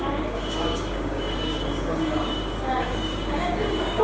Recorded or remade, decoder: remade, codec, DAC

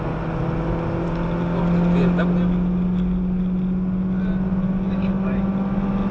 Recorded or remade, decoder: recorded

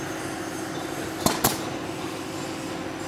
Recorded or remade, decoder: recorded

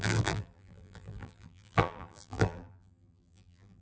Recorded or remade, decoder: remade, vocoder, BigVGAN v2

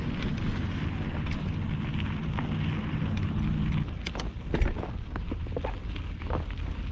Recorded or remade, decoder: recorded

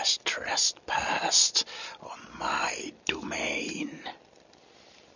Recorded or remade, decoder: recorded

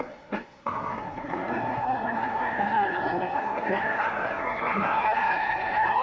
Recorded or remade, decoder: remade, codec, SNAC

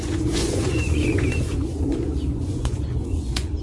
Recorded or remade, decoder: remade, vocoder, Vocos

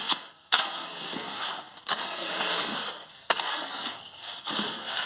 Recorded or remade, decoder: remade, codec, SNAC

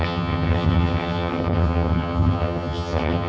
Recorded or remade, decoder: remade, vocoder, HiFi-GAN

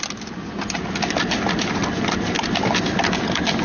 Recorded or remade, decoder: recorded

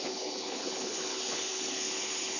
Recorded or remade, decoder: remade, codec, HILCodec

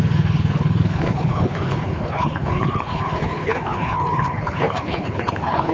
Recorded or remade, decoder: remade, codec, HILCodec